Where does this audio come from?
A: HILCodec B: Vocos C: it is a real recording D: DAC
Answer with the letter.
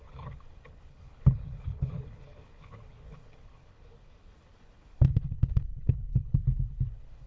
A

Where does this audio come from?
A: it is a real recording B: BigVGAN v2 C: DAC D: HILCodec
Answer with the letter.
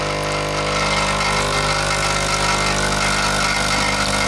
A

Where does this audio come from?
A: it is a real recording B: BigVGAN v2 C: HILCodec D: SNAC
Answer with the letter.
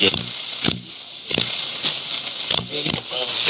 A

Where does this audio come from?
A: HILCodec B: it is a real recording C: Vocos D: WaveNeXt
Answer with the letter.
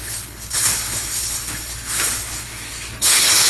A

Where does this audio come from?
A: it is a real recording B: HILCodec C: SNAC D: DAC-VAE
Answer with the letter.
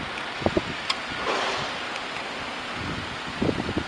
A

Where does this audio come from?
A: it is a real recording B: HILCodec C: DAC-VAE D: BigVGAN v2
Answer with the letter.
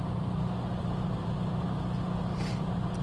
A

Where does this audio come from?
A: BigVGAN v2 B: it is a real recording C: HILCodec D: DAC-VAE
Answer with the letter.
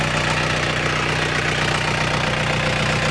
B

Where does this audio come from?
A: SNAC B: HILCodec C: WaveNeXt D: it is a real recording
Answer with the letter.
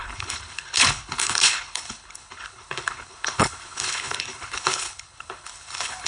B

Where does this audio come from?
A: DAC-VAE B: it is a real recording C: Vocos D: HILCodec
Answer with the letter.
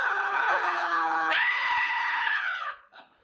D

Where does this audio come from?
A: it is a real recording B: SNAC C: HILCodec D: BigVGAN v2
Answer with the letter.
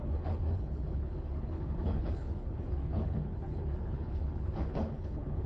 C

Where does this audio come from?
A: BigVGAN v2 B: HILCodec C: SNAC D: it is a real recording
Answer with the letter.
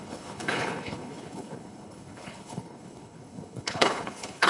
B